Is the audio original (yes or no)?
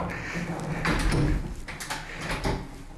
yes